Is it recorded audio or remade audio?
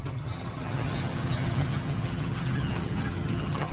remade